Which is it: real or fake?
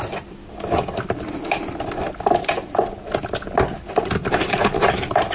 real